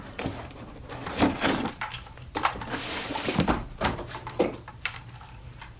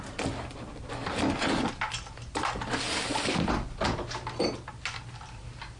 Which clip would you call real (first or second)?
second